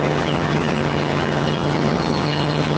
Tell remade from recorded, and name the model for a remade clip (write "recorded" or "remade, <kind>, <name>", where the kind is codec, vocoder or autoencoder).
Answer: remade, vocoder, HiFi-GAN